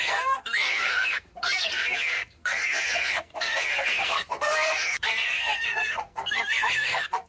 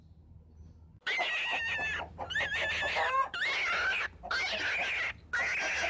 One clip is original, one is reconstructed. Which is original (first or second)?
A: second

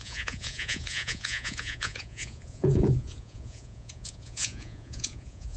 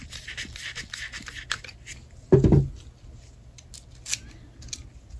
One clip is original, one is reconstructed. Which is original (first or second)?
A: second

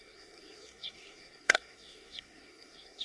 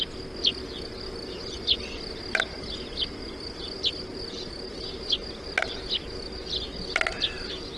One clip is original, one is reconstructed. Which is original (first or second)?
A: second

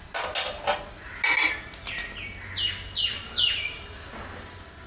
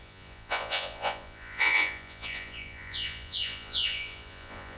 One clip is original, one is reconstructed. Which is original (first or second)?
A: first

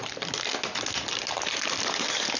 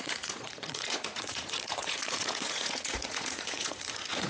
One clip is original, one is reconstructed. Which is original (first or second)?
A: first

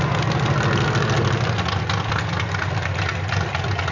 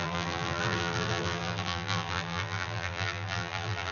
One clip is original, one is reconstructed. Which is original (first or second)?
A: first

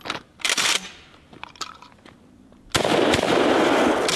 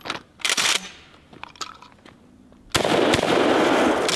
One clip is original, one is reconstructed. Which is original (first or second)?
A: second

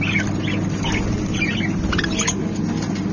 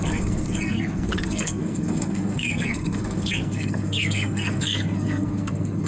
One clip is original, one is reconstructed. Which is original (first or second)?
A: first